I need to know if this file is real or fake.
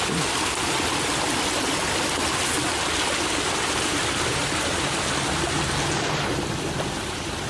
real